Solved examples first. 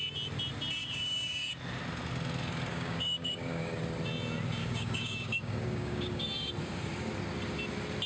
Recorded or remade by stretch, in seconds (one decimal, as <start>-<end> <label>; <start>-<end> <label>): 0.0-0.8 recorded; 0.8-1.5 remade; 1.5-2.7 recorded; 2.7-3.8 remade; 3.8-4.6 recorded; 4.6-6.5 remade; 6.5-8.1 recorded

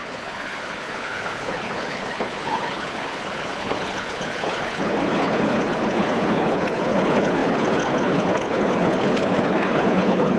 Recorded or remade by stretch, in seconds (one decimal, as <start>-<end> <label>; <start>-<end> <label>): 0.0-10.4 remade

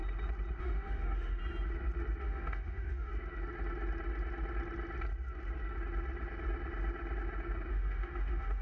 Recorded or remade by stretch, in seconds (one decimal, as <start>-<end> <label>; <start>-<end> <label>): 0.0-0.6 recorded; 0.6-1.4 remade; 1.4-2.2 recorded; 2.2-3.1 remade; 3.1-7.7 recorded; 7.7-8.6 remade

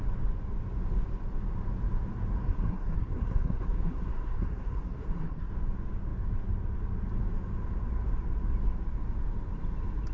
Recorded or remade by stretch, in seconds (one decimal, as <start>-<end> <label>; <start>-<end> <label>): 0.0-2.4 recorded; 2.4-5.5 remade; 5.5-10.1 recorded

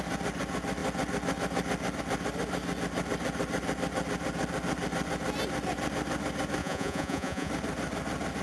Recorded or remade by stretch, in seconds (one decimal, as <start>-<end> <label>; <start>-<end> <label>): 0.0-6.6 recorded; 6.6-7.5 remade; 7.5-8.4 recorded

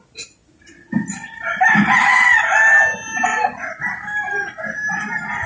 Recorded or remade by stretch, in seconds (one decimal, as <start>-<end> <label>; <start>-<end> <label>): 0.0-5.5 recorded